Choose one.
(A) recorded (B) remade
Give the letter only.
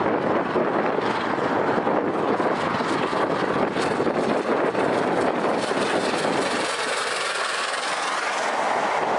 A